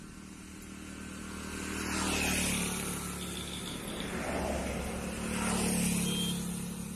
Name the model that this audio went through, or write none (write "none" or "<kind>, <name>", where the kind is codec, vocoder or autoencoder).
none